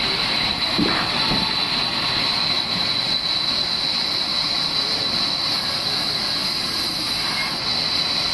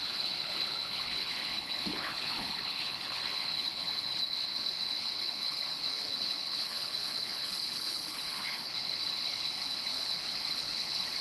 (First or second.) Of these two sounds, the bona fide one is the first